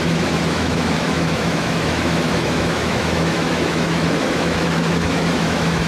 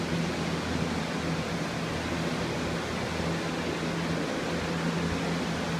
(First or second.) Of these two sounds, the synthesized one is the first